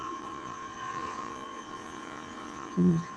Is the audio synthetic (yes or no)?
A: yes